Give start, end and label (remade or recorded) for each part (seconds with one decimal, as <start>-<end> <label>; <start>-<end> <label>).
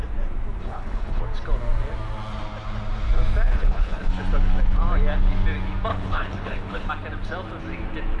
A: 0.0-0.6 recorded; 0.6-1.2 remade; 1.2-3.5 recorded; 3.5-4.1 remade; 4.1-5.9 recorded; 5.9-6.9 remade; 6.9-8.2 recorded